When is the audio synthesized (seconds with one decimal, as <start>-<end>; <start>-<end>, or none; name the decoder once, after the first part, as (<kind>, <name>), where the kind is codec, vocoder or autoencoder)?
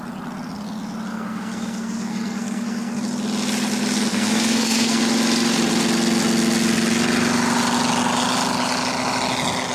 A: 1.1-3.0 (codec, SNAC); 4.1-5.0